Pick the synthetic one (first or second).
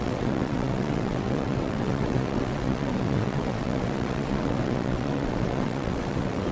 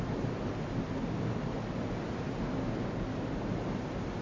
first